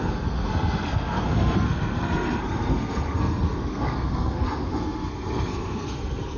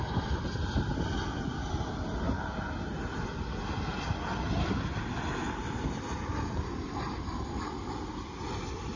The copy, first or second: first